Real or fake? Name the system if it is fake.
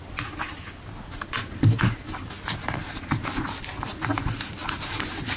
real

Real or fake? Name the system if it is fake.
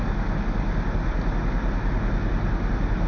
real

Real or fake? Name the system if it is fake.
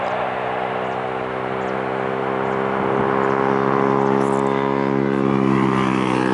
real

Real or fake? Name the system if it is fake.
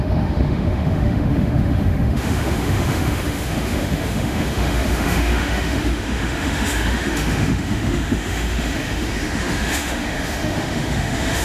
fake, autoencoder, DAC-VAE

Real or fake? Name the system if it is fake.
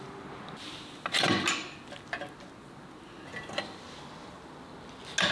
real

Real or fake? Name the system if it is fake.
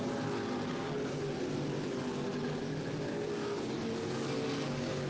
real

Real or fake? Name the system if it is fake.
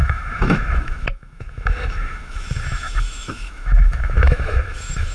fake, autoencoder, DAC-VAE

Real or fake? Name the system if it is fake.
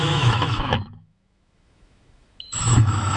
fake, autoencoder, DAC-VAE